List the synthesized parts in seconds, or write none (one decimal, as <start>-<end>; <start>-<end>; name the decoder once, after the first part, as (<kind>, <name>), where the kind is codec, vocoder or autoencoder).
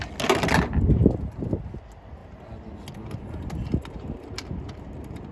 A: none